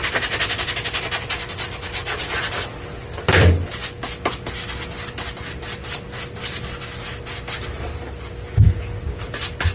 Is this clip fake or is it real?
real